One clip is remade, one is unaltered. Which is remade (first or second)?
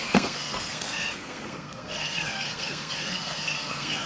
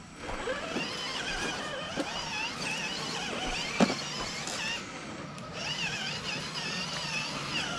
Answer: first